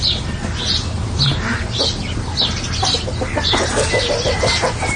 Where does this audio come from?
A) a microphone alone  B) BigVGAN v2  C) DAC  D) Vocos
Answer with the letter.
A